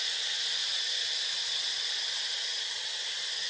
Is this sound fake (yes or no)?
no